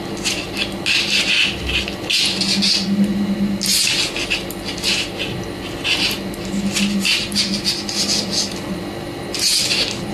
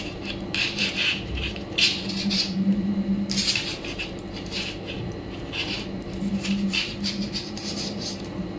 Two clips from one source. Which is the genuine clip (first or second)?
first